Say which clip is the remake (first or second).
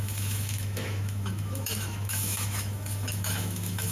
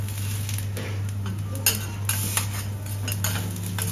first